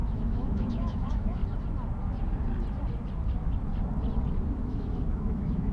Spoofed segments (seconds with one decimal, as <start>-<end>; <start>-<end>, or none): 0.0-1.4; 4.5-5.7

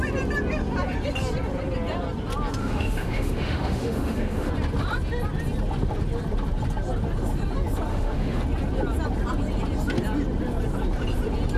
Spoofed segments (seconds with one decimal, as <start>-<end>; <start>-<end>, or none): 2.6-4.5; 7.9-8.4